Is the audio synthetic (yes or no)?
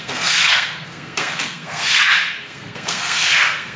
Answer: yes